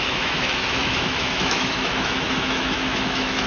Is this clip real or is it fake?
fake